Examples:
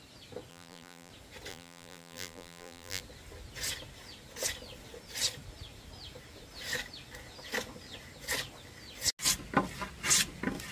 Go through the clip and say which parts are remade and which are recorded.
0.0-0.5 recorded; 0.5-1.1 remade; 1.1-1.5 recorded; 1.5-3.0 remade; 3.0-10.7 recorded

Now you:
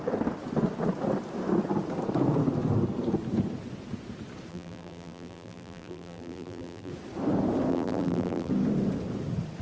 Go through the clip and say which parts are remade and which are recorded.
0.0-4.5 recorded; 4.5-6.9 remade; 6.9-7.7 recorded; 7.7-8.5 remade; 8.5-9.6 recorded

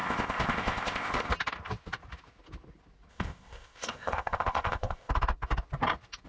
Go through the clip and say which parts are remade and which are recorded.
0.0-1.3 remade; 1.3-3.1 recorded; 3.1-5.1 remade; 5.1-6.3 recorded

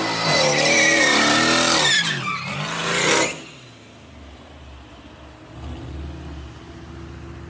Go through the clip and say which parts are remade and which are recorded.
0.0-7.5 recorded

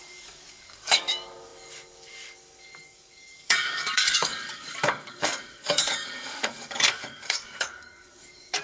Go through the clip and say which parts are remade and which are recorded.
0.0-8.6 remade

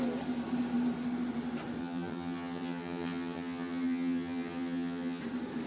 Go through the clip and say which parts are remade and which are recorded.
0.0-1.8 recorded; 1.8-5.2 remade; 5.2-5.7 recorded

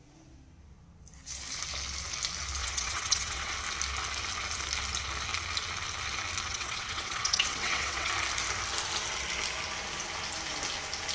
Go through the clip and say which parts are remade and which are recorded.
0.0-2.6 recorded; 2.6-3.5 remade; 3.5-6.5 recorded; 6.5-8.1 remade; 8.1-11.1 recorded

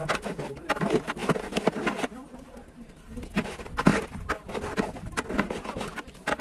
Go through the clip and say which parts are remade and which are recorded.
0.0-3.9 recorded; 3.9-5.1 remade; 5.1-6.4 recorded